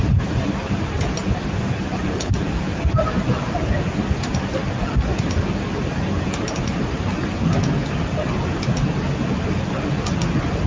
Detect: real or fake real